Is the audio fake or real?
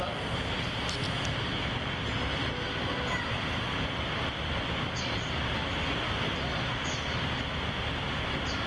real